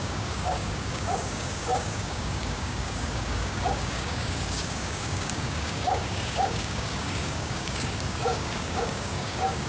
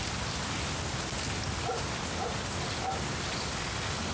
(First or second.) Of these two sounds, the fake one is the first